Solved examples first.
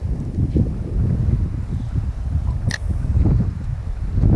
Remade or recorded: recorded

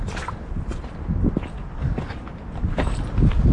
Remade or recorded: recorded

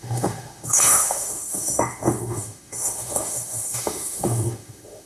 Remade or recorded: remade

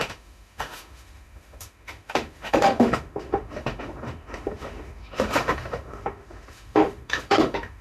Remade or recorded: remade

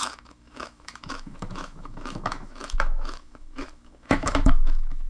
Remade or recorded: remade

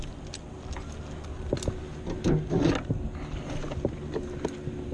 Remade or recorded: recorded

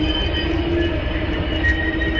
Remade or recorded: recorded